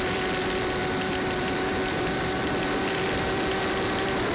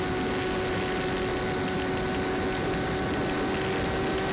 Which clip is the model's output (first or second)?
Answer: first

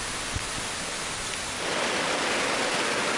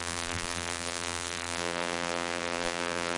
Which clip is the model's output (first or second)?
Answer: second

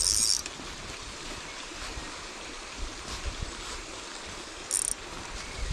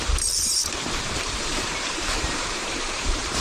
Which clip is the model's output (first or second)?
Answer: second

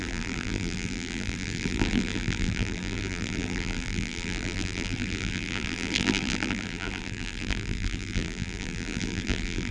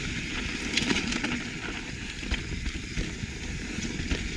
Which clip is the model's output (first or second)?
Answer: first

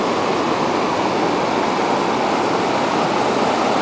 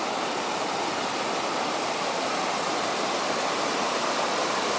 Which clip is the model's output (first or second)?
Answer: second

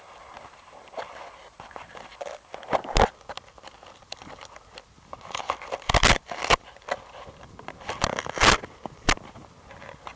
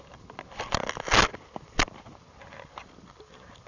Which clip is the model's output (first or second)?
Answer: second